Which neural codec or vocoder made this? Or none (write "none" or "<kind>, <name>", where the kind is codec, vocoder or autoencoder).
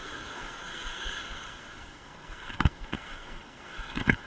codec, SNAC